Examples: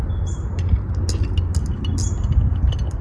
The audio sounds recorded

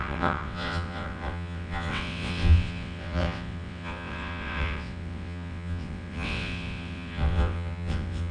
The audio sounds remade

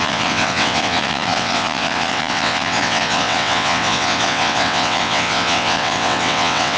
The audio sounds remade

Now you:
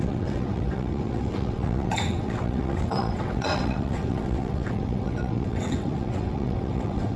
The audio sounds remade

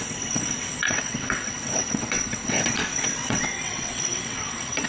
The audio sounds remade